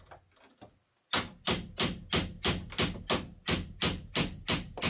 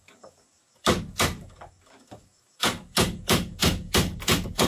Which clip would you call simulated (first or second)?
second